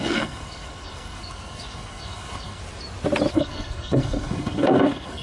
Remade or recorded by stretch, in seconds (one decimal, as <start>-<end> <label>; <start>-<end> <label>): 0.0-2.6 remade; 2.6-3.3 recorded; 3.3-5.2 remade